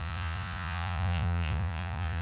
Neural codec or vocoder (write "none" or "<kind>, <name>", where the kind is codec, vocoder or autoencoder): vocoder, Vocos